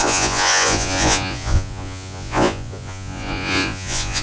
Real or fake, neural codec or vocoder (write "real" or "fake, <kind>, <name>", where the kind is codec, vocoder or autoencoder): fake, vocoder, Vocos